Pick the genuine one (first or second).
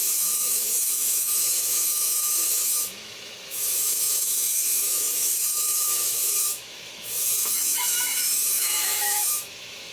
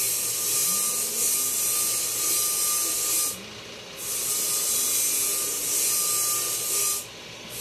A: second